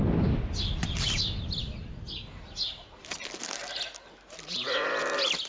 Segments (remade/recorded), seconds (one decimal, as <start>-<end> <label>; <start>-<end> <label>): 0.0-5.5 recorded